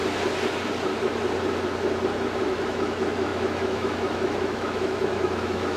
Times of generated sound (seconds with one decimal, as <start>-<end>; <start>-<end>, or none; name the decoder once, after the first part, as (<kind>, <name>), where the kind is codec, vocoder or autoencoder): 2.4-5.8 (autoencoder, DAC-VAE)